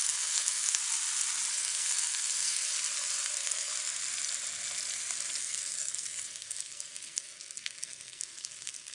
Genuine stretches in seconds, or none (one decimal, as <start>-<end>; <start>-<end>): 0.8-1.5; 2.7-3.3; 3.7-5.4